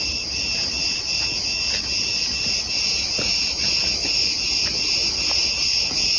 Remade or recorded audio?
recorded